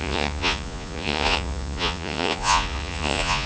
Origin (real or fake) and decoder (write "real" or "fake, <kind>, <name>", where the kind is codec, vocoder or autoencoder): fake, vocoder, Vocos